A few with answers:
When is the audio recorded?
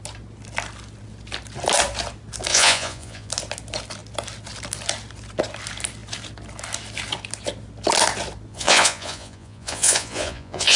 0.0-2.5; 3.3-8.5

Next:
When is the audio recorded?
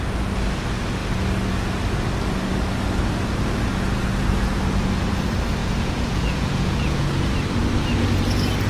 0.0-5.6; 7.3-8.7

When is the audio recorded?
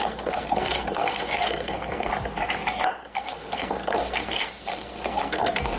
2.1-3.0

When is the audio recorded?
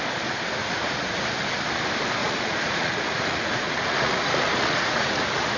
0.0-0.6; 1.2-2.2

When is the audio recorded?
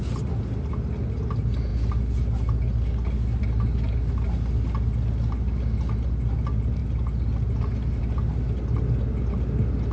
0.0-9.9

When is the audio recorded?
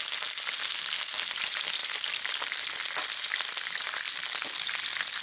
0.0-5.2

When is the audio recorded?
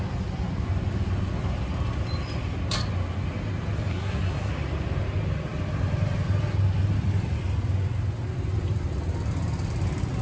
0.0-3.9; 4.5-10.2